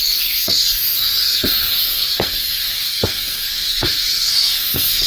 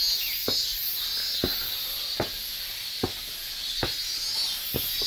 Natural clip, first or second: second